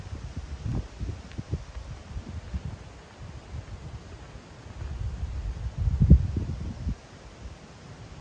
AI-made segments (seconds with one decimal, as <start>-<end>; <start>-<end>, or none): none